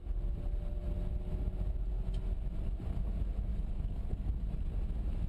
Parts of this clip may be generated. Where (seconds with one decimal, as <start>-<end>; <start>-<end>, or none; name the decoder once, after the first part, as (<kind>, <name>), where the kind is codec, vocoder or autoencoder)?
3.5-4.3 (codec, DAC)